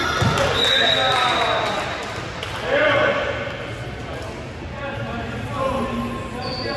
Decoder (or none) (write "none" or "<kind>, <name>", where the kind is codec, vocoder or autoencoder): none